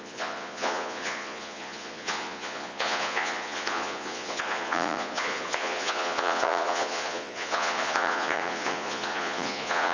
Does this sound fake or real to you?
fake